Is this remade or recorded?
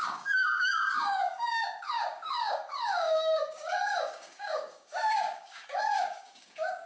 remade